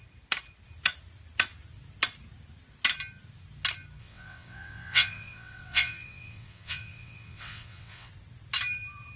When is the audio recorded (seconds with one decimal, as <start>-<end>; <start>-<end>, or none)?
0.0-4.0; 8.1-9.2